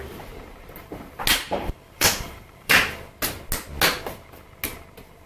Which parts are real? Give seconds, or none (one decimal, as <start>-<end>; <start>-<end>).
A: 0.0-1.3; 2.7-5.3